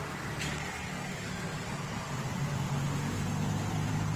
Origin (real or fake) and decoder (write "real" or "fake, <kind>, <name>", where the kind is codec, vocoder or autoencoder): real